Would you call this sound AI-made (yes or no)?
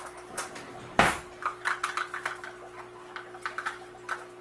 no